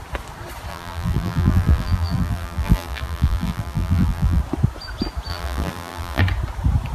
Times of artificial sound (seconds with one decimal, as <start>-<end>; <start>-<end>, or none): 0.7-4.4; 5.3-6.2